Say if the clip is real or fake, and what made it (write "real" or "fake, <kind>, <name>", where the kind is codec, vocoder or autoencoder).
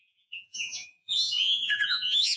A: fake, vocoder, Vocos